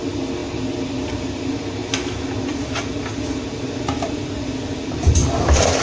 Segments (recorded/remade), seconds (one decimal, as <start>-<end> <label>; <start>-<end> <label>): 0.0-5.8 recorded